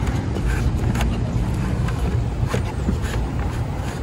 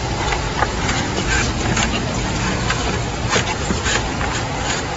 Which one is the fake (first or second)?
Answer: first